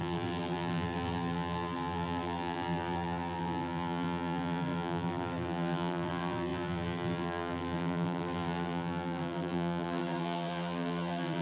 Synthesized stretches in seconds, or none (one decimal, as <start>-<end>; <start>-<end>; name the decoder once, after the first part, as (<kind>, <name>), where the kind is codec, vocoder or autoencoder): 0.0-11.4 (vocoder, BigVGAN v2)